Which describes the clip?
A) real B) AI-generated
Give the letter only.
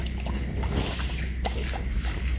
A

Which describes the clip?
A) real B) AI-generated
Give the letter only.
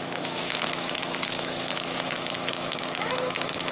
B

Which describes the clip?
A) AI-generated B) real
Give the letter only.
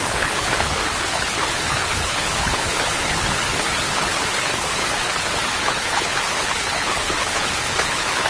A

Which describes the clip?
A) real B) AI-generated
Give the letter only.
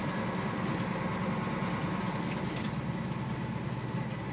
A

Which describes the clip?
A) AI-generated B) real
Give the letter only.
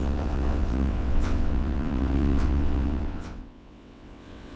A